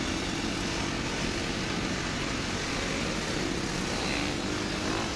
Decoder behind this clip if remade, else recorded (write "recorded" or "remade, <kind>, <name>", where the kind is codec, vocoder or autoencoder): recorded